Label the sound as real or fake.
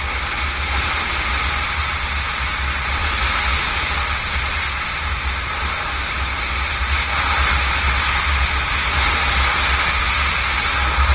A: real